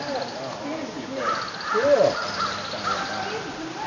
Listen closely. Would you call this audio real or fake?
real